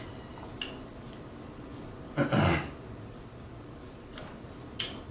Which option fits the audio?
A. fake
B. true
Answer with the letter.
B